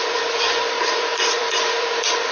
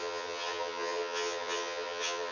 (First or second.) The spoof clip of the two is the second